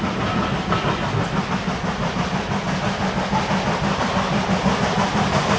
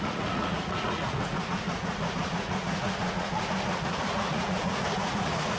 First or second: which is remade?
second